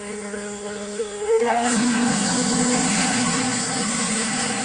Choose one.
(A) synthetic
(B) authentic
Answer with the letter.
A